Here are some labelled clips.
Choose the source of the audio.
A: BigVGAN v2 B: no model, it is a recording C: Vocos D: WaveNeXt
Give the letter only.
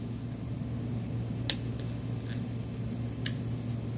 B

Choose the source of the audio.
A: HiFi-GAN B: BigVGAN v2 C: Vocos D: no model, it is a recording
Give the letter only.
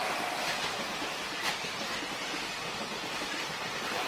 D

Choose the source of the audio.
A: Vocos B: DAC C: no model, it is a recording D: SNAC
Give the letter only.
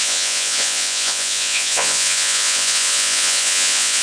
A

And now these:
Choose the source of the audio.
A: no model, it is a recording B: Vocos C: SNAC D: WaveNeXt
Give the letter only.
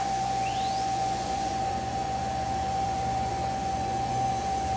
B